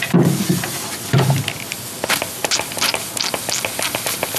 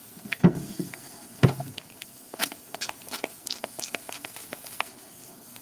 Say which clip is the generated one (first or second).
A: second